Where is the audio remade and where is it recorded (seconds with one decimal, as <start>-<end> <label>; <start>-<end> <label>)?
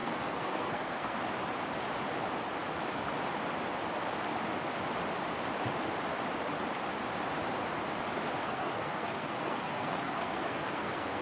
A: 0.0-1.2 remade; 1.2-8.4 recorded; 8.4-11.2 remade